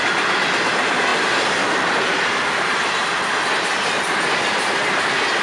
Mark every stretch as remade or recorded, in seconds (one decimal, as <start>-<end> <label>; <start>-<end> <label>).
0.0-5.4 recorded